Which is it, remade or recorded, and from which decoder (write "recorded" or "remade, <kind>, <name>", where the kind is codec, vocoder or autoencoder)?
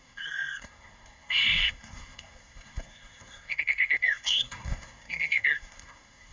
remade, codec, SNAC